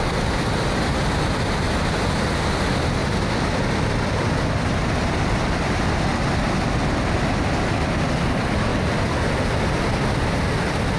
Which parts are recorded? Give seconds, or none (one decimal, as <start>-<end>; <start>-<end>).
0.0-3.0; 6.6-8.7; 9.5-11.0

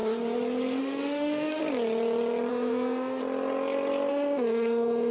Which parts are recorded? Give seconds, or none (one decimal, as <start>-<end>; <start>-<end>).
0.0-0.8; 1.6-2.5; 3.2-4.1

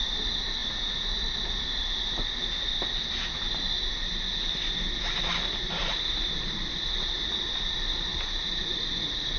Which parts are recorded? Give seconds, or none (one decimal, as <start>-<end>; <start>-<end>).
0.0-9.4

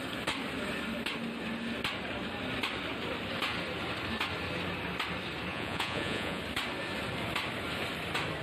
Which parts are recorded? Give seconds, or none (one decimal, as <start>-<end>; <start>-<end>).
0.0-5.5; 6.4-8.4

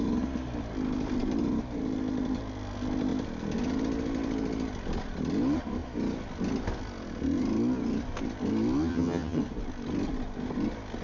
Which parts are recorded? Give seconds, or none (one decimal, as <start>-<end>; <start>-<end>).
0.0-8.9; 9.4-11.0